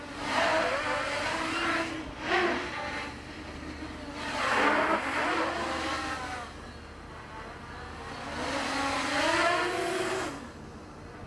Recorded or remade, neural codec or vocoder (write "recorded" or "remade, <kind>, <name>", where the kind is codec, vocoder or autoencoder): recorded